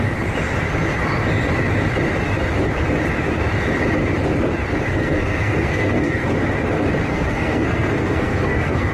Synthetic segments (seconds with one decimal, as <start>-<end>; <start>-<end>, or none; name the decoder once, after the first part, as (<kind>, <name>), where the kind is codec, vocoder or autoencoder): 4.9-6.3 (codec, SNAC); 7.1-8.9